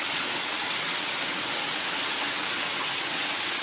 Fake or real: fake